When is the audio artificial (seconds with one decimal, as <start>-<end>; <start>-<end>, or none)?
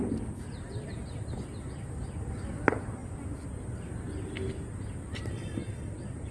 none